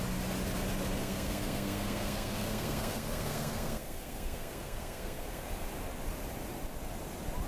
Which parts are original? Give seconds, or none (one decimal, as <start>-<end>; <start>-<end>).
0.0-1.0; 5.5-7.5